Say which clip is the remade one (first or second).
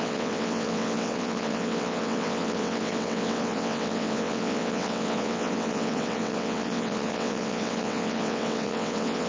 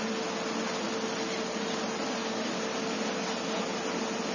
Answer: first